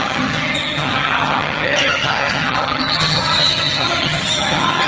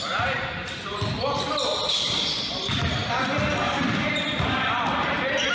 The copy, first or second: first